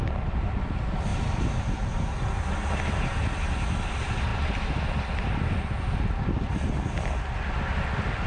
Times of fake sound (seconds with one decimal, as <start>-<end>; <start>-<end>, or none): 1.1-2.7; 4.3-6.5